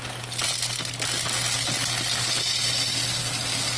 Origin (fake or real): real